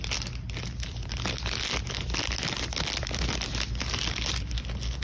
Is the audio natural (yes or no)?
yes